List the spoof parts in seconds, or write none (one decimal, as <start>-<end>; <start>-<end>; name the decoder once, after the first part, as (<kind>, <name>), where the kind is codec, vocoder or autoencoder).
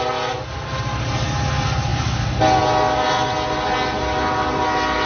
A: none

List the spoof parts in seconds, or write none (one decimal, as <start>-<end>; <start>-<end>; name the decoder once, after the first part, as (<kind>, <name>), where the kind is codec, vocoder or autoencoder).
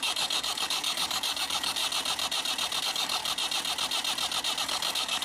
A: 0.0-1.8 (codec, DAC); 2.8-3.2; 4.6-5.2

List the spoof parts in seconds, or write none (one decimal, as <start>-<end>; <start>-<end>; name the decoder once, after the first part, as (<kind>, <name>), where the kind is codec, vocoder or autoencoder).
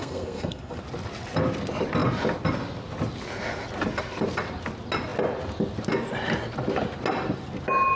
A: 0.0-0.8 (codec, SNAC)